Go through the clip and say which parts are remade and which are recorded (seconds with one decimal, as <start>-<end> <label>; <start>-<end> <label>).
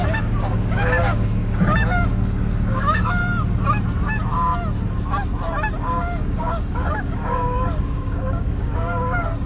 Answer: 0.0-3.2 remade; 3.2-5.8 recorded; 5.8-9.5 remade